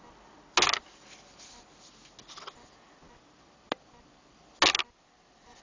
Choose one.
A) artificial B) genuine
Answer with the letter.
B